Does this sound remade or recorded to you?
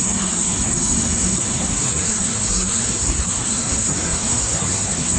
remade